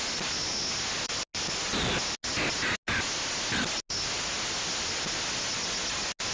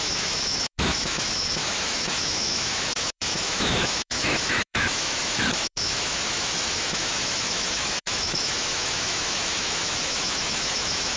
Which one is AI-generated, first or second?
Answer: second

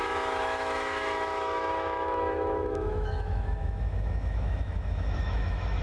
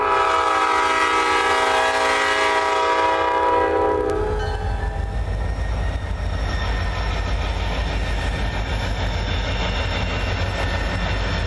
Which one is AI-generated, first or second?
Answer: first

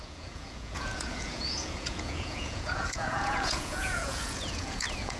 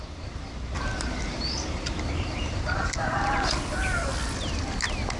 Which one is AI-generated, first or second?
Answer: first